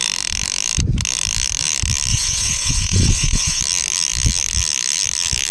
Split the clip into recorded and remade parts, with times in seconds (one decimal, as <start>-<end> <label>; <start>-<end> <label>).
0.0-2.1 recorded; 2.1-3.6 remade; 3.6-5.5 recorded